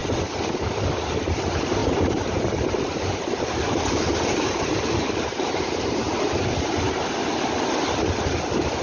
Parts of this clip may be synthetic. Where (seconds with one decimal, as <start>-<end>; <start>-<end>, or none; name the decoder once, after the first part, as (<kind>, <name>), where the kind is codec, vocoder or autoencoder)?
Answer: 1.8-6.6 (vocoder, BigVGAN v2)